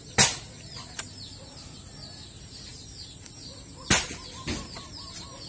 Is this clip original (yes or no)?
yes